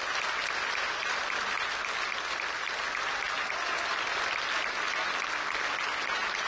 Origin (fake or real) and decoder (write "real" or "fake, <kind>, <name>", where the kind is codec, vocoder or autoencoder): real